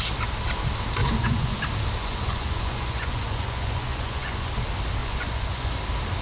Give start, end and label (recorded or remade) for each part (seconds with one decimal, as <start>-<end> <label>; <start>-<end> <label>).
0.0-1.0 recorded; 1.0-1.6 remade; 1.6-2.0 recorded; 2.0-4.5 remade; 4.5-5.0 recorded; 5.0-5.7 remade; 5.7-6.2 recorded